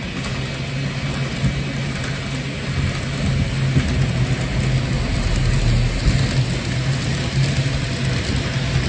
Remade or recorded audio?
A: recorded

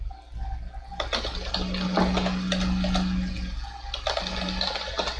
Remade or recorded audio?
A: recorded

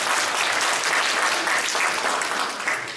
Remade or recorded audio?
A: recorded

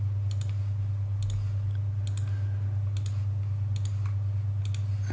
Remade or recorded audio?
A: recorded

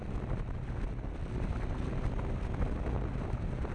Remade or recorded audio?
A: recorded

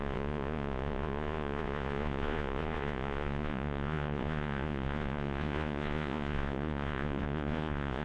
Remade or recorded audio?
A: remade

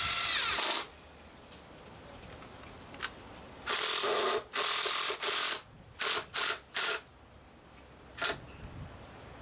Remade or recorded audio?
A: recorded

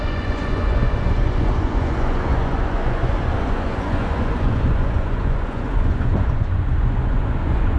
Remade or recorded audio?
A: remade